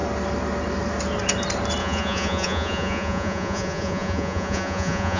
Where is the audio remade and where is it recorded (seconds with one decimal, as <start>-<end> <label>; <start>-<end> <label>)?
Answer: 0.0-1.8 recorded; 1.8-5.2 remade